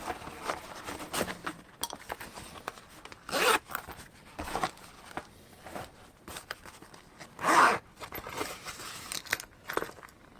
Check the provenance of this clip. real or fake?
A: real